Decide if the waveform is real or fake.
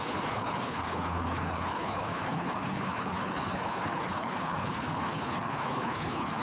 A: fake